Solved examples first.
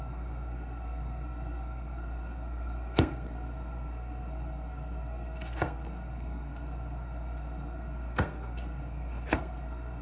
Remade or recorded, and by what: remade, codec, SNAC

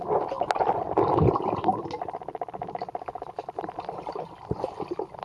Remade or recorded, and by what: recorded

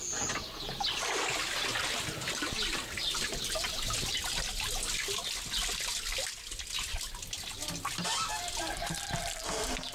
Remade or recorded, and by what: recorded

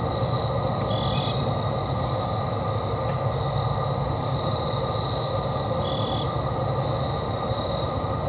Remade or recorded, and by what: recorded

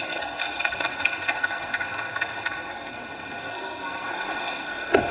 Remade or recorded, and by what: remade, codec, SNAC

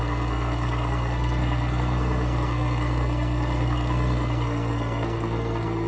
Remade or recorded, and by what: remade, codec, SNAC